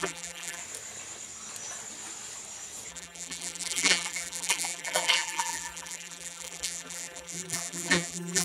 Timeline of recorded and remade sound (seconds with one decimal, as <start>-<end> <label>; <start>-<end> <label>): 0.0-0.6 remade; 0.6-2.9 recorded; 2.9-8.4 remade